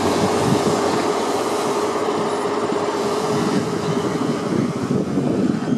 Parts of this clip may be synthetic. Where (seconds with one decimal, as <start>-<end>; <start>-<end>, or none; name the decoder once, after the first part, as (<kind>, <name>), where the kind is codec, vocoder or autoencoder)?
0.0-2.0 (vocoder, Vocos); 3.0-5.8